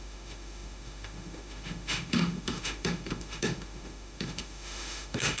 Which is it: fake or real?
fake